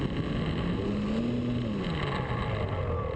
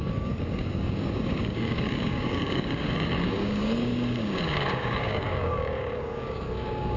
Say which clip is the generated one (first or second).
second